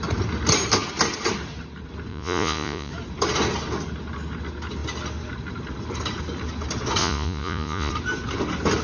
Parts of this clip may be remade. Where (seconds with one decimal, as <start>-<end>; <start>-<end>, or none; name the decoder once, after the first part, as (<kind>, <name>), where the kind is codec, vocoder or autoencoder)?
2.1-2.9 (vocoder, Vocos); 7.0-7.9